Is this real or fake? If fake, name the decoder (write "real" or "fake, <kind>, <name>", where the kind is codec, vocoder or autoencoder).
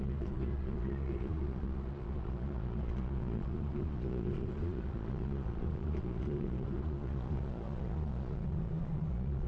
fake, vocoder, Vocos